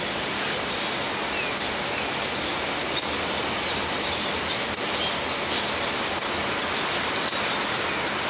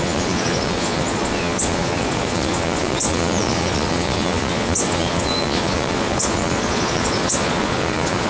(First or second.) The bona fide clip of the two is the first